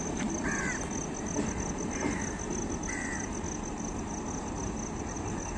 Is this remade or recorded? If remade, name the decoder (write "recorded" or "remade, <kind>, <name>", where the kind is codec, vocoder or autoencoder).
recorded